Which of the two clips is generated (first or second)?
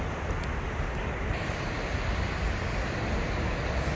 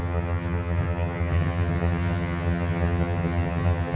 second